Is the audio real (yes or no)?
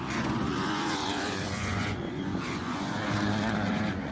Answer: no